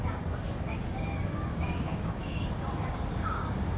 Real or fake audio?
fake